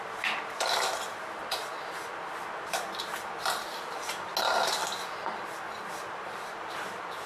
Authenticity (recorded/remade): recorded